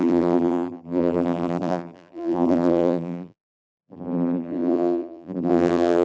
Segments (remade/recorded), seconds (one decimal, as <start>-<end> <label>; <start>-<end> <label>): 0.0-6.0 remade